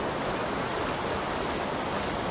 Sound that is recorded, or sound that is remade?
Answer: recorded